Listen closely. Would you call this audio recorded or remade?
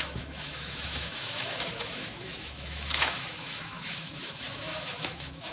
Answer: remade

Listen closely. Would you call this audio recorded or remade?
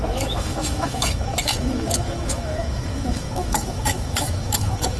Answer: remade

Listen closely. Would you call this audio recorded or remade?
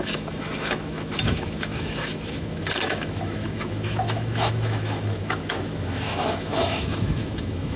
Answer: remade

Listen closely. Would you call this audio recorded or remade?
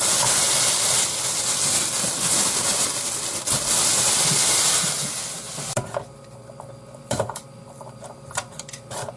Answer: recorded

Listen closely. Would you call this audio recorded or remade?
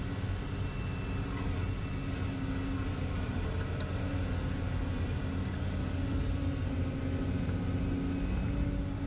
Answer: recorded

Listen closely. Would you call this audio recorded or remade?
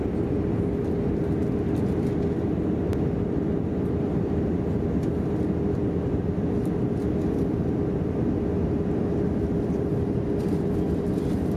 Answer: recorded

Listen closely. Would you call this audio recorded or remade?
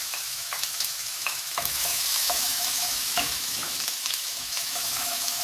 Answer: remade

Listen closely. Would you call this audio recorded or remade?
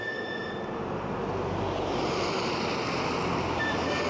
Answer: recorded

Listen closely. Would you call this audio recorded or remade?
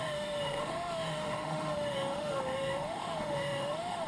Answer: remade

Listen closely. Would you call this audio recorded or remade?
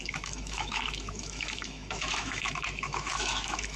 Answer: remade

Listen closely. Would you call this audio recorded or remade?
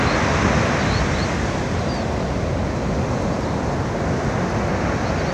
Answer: recorded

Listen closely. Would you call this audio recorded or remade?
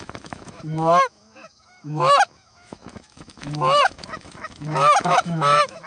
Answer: remade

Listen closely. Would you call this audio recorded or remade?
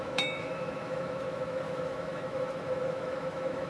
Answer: remade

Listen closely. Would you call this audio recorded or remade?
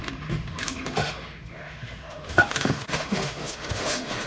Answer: remade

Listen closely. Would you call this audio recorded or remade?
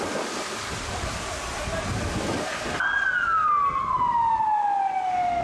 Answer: recorded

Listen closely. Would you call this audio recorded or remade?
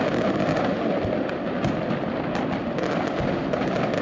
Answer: recorded